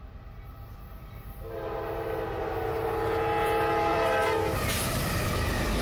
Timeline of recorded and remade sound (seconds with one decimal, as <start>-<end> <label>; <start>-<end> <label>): 0.0-3.9 recorded; 3.9-5.3 remade; 5.3-5.8 recorded